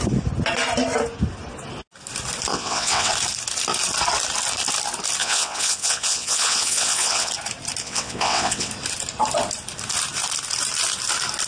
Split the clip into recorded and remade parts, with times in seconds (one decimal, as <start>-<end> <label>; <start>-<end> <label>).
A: 0.0-2.5 recorded; 2.5-3.1 remade; 3.1-5.2 recorded; 5.2-7.3 remade; 7.3-7.8 recorded; 7.8-8.7 remade; 8.7-11.5 recorded